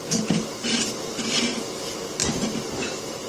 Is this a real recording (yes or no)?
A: yes